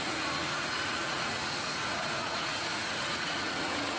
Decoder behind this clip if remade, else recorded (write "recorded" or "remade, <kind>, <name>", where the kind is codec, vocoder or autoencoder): remade, vocoder, Vocos